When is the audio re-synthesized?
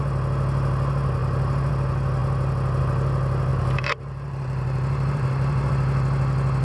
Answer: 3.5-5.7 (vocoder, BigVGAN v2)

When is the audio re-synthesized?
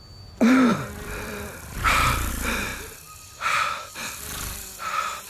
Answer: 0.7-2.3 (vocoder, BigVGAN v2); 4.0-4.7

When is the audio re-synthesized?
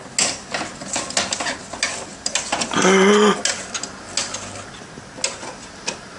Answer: none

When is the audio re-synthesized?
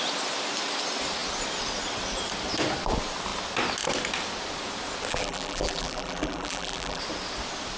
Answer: 5.1-7.0 (vocoder, BigVGAN v2)